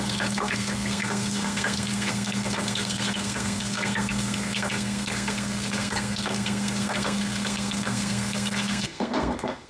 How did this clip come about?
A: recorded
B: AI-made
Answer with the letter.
B